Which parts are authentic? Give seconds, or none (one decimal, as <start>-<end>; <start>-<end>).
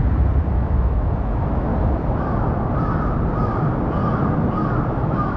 0.0-0.5; 1.7-4.9